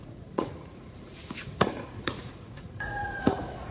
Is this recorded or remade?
remade